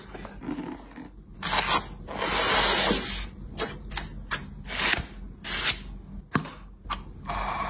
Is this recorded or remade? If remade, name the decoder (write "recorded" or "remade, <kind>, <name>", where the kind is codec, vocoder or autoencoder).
recorded